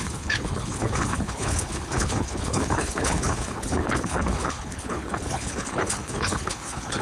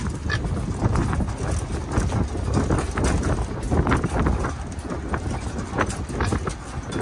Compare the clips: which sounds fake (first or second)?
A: first